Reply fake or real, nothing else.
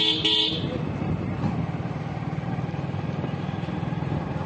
real